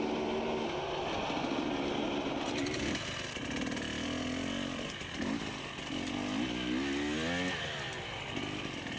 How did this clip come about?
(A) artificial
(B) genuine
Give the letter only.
B